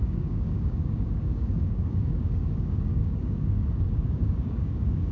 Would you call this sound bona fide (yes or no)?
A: no